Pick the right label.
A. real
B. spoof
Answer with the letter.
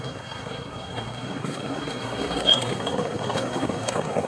B